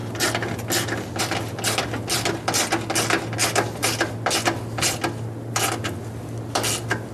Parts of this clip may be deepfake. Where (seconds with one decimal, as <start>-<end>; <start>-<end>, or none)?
none